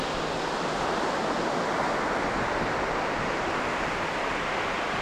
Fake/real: real